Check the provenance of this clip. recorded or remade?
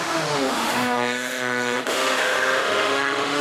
remade